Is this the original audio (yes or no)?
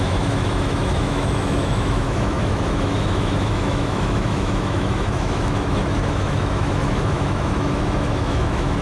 no